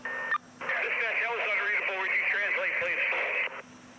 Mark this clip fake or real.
real